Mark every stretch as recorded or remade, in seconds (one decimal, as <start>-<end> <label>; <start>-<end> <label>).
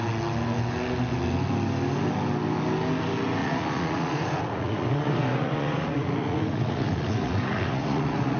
0.0-3.4 recorded; 3.4-8.4 remade